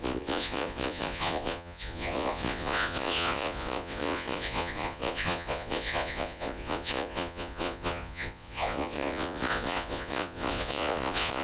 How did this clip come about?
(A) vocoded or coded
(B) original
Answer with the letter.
A